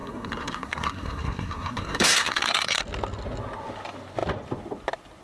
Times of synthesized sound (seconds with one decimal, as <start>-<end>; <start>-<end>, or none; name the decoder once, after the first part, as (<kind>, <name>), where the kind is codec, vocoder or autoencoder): 0.0-2.8 (codec, SNAC)